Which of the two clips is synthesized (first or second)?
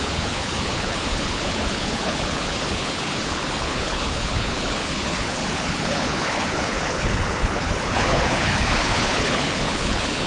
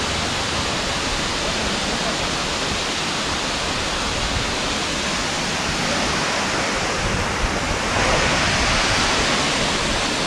first